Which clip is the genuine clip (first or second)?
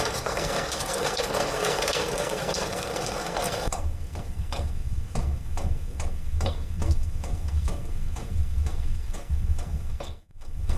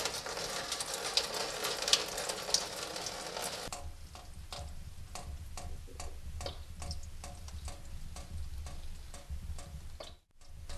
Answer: second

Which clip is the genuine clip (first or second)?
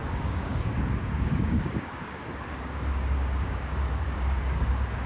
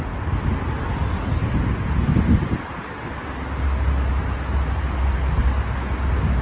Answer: second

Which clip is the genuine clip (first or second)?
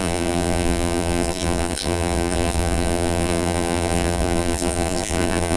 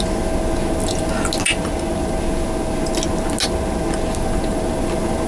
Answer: second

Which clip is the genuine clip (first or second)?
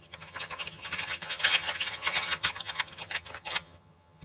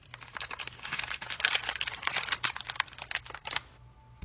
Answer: second